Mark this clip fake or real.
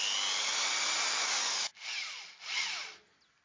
real